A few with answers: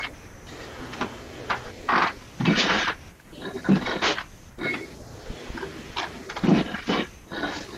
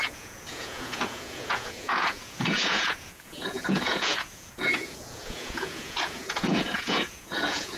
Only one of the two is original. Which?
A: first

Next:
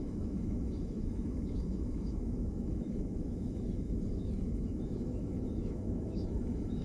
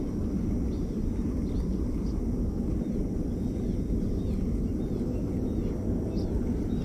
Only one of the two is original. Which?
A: second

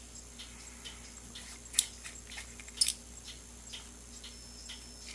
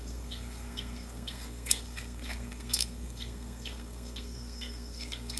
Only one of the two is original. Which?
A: first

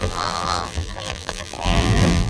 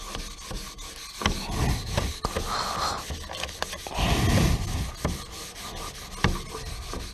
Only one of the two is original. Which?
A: second